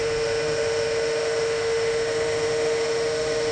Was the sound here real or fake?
fake